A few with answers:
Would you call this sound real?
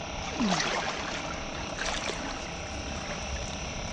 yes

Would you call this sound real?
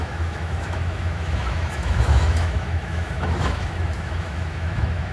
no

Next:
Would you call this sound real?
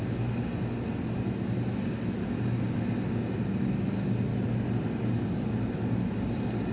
yes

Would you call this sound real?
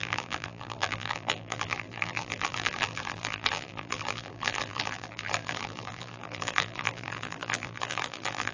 no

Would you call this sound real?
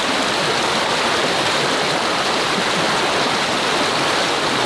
yes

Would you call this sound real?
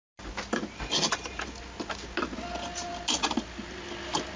yes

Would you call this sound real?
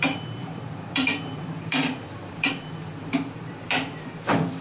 no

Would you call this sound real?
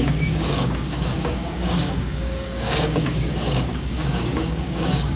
no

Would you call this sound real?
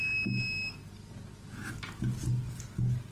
yes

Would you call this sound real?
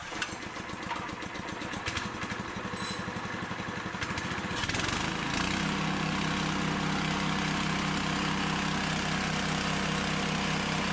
yes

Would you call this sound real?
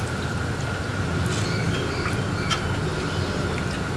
yes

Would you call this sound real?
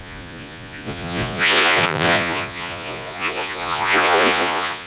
no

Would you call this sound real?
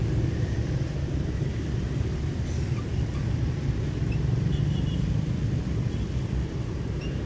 yes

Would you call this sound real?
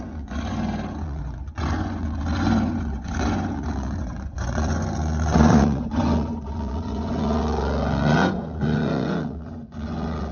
no